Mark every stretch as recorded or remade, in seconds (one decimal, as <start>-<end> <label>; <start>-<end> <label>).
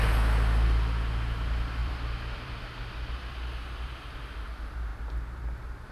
0.0-1.8 recorded; 1.8-2.6 remade; 2.6-5.9 recorded